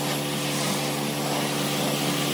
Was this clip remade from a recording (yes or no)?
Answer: no